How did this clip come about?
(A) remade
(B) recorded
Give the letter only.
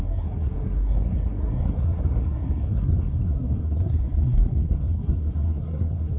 A